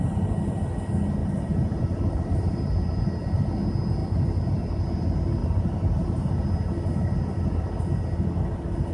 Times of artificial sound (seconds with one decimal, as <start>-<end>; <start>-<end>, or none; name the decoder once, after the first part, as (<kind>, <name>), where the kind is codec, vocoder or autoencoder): 1.2-2.7 (vocoder, BigVGAN v2); 5.4-6.3